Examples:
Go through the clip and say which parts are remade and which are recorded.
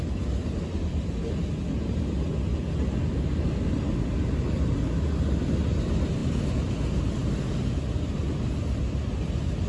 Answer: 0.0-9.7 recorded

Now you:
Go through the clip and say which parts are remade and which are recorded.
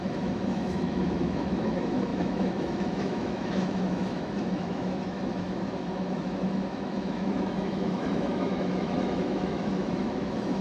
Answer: 0.0-10.6 remade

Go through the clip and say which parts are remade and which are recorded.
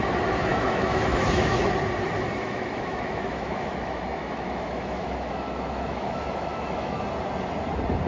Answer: 0.0-0.5 recorded; 0.5-1.7 remade; 1.7-2.4 recorded; 2.4-7.0 remade; 7.0-8.1 recorded